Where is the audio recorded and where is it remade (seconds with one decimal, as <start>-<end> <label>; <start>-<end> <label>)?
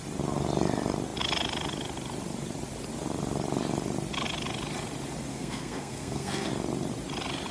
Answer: 0.0-5.3 recorded; 5.3-6.5 remade; 6.5-7.5 recorded